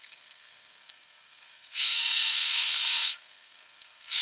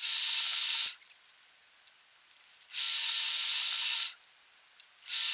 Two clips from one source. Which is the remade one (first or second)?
first